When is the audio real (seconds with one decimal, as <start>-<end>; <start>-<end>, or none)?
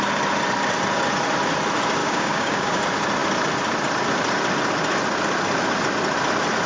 0.0-2.0; 2.8-6.7